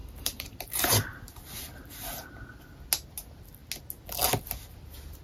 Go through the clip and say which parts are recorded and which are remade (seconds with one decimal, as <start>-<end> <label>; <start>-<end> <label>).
0.0-1.3 remade; 1.3-5.2 recorded